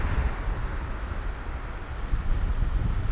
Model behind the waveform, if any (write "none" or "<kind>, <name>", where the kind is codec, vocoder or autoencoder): none